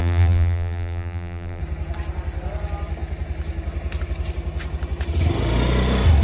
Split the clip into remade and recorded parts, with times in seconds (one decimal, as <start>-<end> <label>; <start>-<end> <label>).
0.0-1.6 remade; 1.6-6.2 recorded